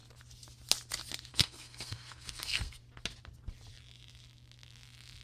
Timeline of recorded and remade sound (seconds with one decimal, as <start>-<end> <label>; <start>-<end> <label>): 0.0-1.3 recorded; 1.3-2.8 remade; 2.8-5.2 recorded